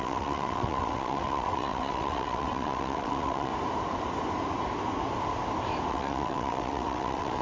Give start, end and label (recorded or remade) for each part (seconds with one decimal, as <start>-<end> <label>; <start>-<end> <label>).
0.0-3.5 remade; 3.5-5.9 recorded; 5.9-7.4 remade